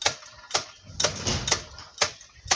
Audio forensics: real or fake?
real